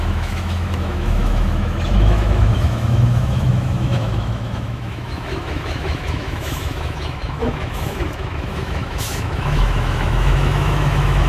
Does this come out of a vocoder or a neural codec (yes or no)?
yes